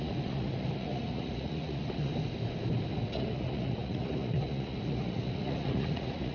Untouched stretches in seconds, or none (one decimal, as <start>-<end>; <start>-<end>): 2.1-2.9